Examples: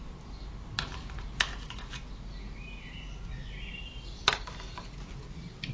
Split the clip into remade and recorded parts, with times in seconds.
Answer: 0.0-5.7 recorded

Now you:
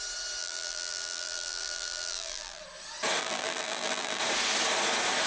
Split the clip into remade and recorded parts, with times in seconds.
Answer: 0.0-0.4 recorded; 0.4-2.6 remade; 2.6-3.2 recorded; 3.2-4.2 remade; 4.2-5.3 recorded